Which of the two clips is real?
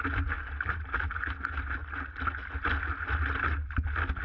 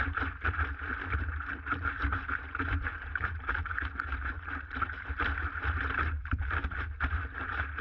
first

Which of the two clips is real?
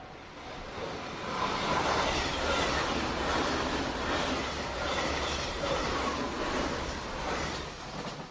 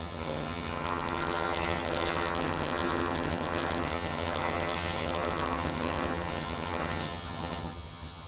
first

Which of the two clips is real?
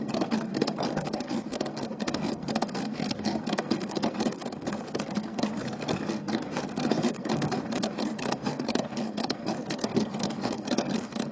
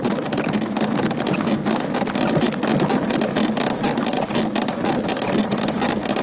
second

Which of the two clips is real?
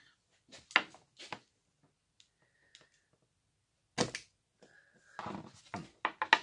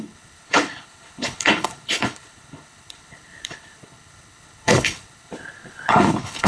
first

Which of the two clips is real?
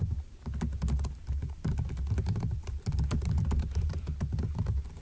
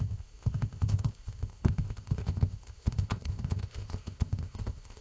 first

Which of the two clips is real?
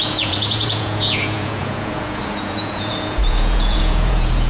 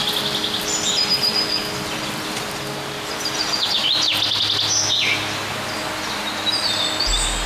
second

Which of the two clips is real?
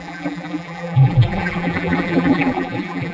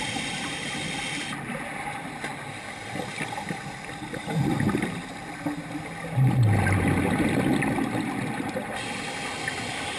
second